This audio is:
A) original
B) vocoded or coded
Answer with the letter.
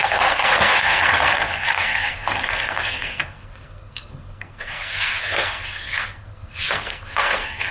B